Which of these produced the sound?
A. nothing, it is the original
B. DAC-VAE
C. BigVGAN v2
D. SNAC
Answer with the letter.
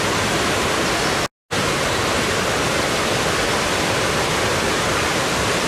A